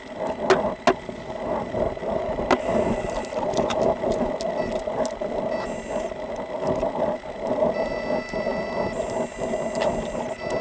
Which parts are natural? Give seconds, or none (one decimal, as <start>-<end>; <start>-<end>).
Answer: 0.0-10.6